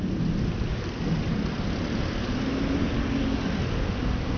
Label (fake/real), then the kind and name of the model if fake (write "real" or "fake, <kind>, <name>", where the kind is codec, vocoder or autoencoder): real